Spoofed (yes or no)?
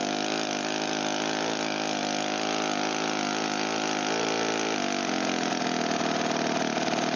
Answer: no